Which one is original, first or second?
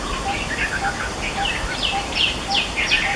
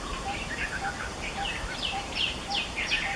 first